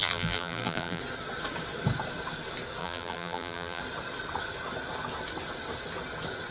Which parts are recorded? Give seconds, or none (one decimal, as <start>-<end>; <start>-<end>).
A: 1.0-2.8; 3.8-6.5